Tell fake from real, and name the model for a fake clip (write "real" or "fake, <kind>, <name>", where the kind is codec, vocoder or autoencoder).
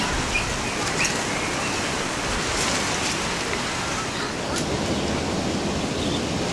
real